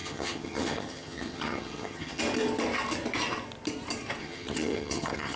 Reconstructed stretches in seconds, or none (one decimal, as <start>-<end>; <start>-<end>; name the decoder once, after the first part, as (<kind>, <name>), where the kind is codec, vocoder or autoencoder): 0.0-2.2 (vocoder, HiFi-GAN); 4.2-5.4